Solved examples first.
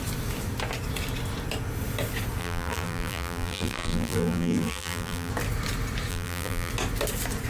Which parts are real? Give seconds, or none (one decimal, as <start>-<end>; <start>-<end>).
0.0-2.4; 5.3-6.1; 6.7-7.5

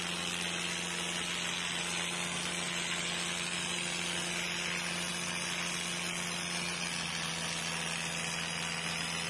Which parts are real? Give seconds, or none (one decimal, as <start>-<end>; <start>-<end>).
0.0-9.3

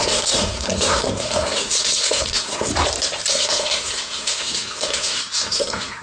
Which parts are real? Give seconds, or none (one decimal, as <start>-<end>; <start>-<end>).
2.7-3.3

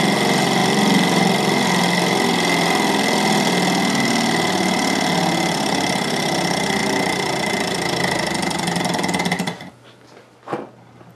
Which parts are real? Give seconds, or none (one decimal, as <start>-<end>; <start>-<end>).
0.0-0.6; 1.8-6.8; 9.7-11.2

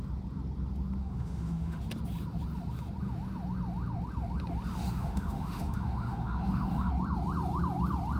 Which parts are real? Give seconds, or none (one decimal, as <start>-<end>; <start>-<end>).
0.0-1.0; 1.8-4.7; 6.9-8.2

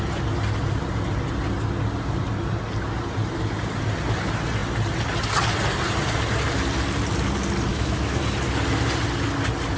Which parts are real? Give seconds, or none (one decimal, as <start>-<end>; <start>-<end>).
0.0-7.7; 8.2-9.8

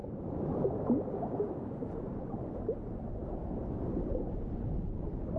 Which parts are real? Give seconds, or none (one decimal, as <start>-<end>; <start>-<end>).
0.0-5.4

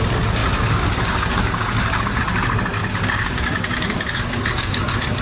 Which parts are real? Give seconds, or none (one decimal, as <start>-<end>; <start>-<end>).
0.0-0.4; 2.2-2.8